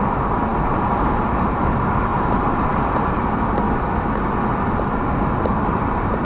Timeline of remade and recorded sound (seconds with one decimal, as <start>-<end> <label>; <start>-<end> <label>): 0.0-0.5 recorded; 0.5-1.6 remade; 1.6-2.1 recorded; 2.1-2.8 remade; 2.8-5.5 recorded; 5.5-6.2 remade